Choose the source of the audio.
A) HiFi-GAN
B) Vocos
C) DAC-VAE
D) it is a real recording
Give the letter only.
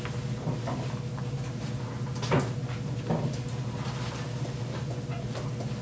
D